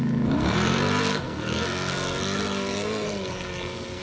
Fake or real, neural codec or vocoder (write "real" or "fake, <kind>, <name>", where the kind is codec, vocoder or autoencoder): fake, codec, SNAC